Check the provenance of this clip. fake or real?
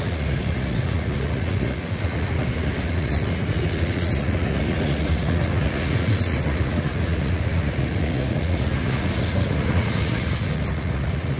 fake